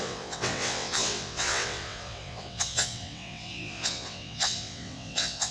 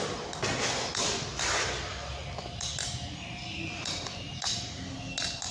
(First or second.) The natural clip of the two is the second